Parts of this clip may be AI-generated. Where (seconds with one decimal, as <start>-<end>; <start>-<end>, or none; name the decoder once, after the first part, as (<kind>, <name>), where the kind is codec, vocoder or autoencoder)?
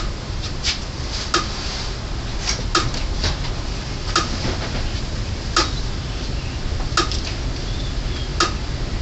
none